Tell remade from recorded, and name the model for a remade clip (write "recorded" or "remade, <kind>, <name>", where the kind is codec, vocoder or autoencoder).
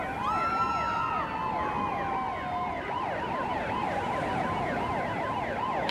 recorded